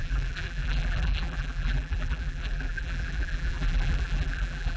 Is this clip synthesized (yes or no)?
yes